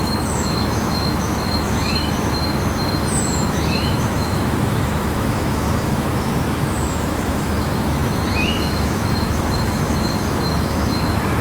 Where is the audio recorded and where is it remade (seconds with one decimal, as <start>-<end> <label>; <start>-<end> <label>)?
0.0-2.4 remade; 2.4-3.1 recorded; 3.1-11.4 remade